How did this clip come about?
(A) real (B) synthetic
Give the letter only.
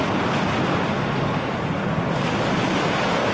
A